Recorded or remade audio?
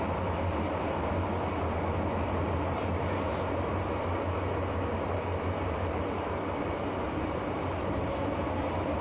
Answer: recorded